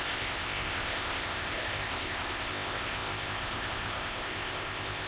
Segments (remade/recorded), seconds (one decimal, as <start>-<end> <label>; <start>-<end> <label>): 0.0-5.1 remade